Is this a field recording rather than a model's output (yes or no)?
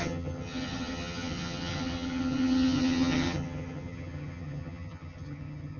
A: no